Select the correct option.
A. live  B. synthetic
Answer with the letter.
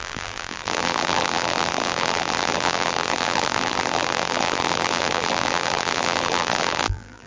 B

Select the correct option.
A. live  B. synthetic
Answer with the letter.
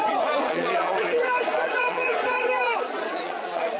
B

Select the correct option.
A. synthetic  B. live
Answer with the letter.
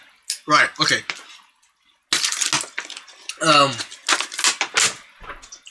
B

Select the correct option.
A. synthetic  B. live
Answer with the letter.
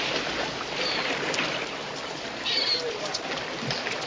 B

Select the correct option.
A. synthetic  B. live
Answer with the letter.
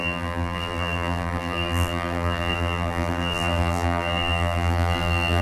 A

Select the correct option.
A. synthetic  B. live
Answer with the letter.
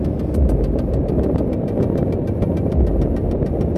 B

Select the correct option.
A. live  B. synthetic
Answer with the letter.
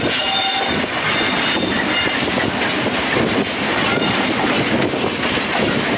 A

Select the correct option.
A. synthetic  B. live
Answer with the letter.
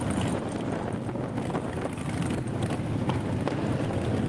B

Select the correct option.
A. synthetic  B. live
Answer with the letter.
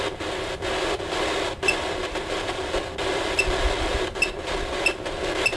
B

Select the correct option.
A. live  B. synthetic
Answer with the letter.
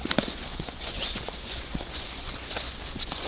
B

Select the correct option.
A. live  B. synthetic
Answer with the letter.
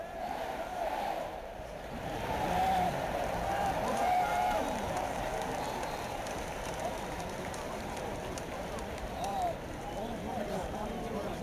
B